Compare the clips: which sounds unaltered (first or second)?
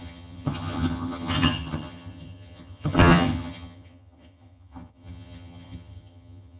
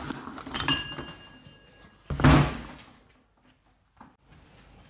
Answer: second